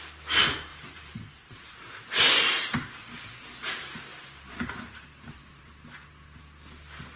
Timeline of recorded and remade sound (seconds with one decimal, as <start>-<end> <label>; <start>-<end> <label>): 0.0-0.7 recorded; 0.7-1.8 remade; 1.8-4.1 recorded; 4.1-5.7 remade; 5.7-7.2 recorded